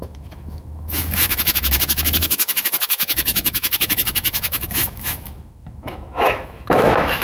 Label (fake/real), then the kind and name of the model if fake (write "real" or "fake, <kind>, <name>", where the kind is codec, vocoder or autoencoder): fake, autoencoder, DAC-VAE